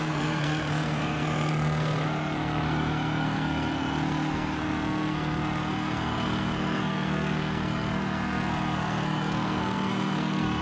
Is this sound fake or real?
fake